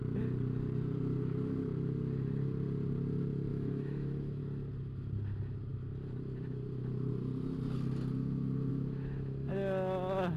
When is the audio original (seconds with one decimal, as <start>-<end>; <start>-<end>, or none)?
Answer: 0.0-3.5; 4.4-8.7; 9.5-10.4